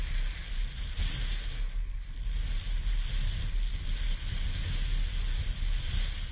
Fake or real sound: real